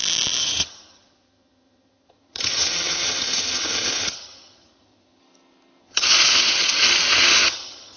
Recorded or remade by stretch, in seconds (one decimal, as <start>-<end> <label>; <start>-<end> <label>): 0.0-0.4 recorded; 0.4-5.2 remade; 5.2-5.8 recorded; 5.8-8.0 remade